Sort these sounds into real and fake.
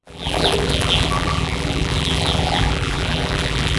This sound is fake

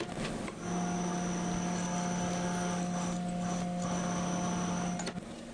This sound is real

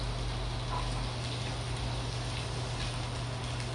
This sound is real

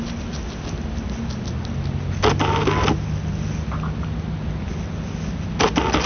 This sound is real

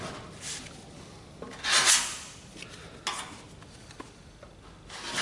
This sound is real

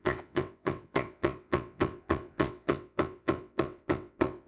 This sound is fake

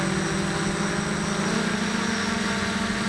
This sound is real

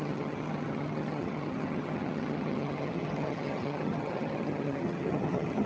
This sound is fake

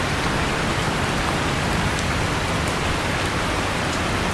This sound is real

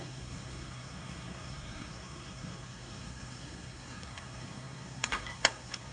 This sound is fake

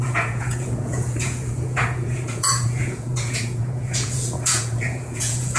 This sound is fake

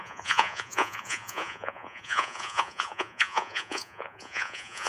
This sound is fake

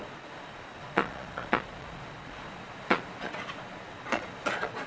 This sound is fake